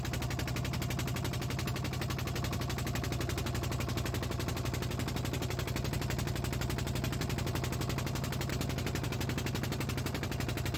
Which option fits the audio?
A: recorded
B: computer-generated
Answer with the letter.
A